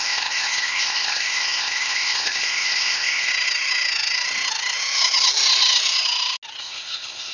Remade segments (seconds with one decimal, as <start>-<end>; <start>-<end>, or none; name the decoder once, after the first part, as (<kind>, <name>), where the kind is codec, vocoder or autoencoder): 0.0-3.3 (codec, ZipCodec); 6.6-7.3